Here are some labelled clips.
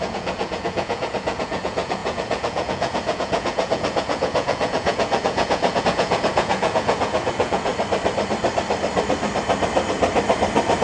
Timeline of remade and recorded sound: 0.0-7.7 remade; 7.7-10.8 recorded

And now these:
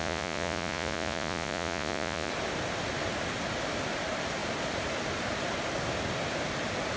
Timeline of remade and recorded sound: 0.0-2.3 remade; 2.3-7.0 recorded

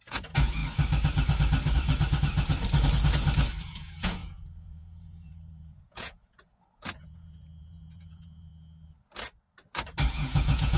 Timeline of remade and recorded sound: 0.0-0.6 remade; 0.6-3.6 recorded; 3.6-8.5 remade; 8.5-10.1 recorded; 10.1-10.8 remade